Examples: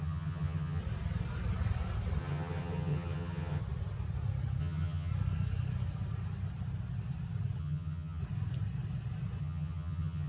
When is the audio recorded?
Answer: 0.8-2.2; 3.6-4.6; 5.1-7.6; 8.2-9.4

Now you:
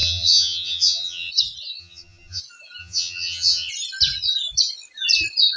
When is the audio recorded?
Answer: 1.3-1.8; 2.4-2.8; 3.7-5.6

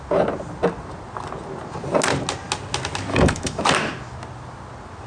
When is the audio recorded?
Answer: 0.0-3.1; 3.6-5.1

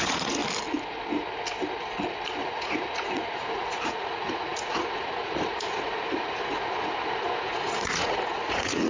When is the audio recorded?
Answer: 0.4-2.4

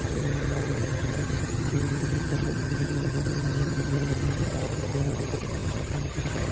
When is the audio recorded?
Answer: none

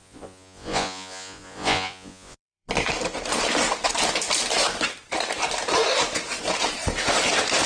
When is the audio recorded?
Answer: 2.7-7.7

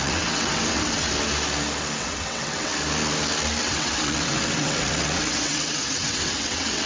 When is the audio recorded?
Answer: 1.1-2.0; 2.7-3.6

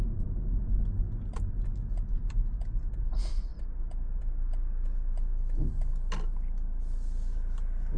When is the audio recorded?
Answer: 0.0-8.0